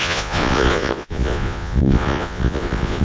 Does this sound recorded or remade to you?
remade